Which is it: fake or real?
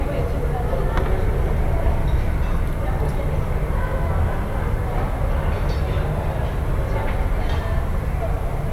real